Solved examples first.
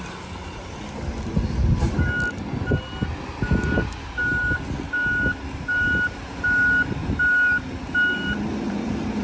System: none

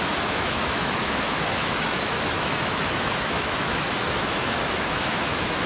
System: autoencoder, DAC-VAE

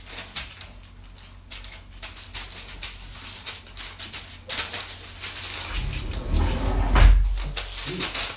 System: none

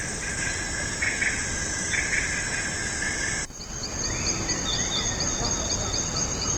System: none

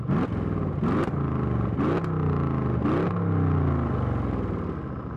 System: none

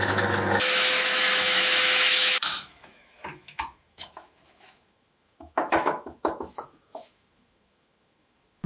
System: autoencoder, DAC-VAE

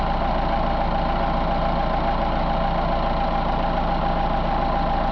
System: none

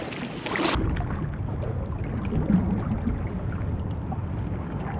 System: none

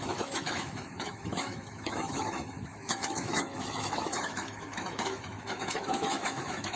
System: autoencoder, DAC-VAE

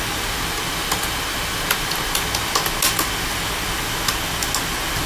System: none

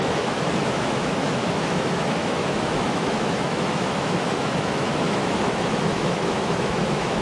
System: autoencoder, DAC-VAE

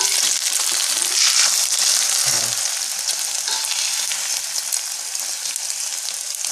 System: none